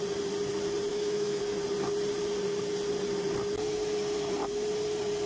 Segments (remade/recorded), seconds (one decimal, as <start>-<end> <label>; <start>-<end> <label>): 0.0-0.9 recorded; 0.9-1.4 remade; 1.4-5.3 recorded